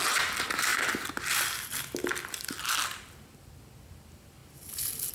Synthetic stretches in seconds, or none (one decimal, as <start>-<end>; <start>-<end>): none